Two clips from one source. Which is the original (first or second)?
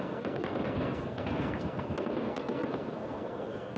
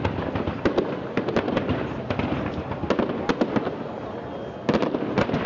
second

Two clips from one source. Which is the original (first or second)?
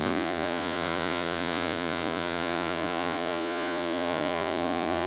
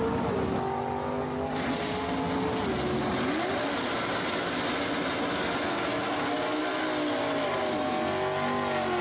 second